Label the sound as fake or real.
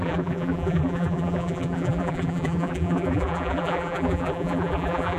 fake